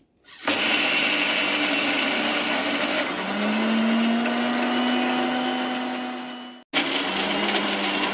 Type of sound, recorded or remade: recorded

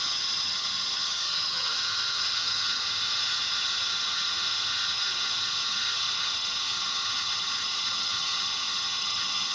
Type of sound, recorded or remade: remade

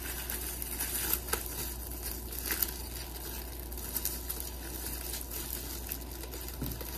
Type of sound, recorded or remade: recorded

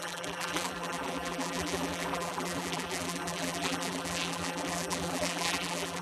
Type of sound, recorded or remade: remade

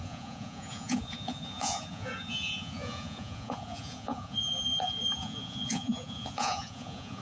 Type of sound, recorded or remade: remade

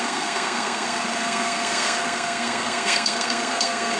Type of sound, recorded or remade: remade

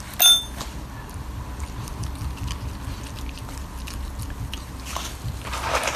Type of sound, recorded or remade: recorded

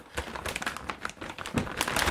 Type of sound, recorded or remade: recorded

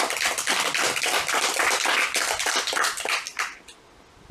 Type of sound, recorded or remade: recorded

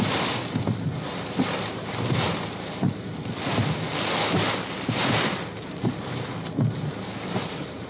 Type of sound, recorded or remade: recorded